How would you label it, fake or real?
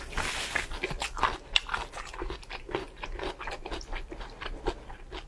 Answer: real